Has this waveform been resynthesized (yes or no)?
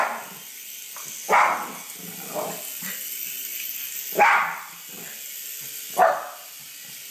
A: no